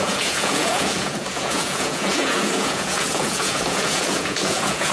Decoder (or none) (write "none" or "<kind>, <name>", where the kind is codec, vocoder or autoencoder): vocoder, Vocos